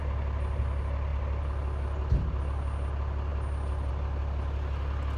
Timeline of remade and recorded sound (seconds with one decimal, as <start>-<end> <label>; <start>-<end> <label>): 0.0-5.2 recorded